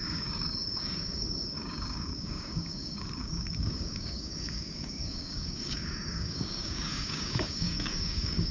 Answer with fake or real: fake